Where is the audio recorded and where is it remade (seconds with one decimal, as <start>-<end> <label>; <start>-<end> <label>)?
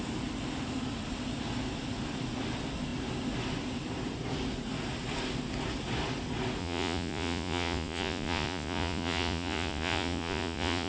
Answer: 0.0-6.6 recorded; 6.6-10.9 remade